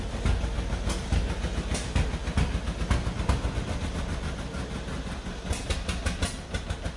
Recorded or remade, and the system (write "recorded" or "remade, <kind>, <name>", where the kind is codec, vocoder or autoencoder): recorded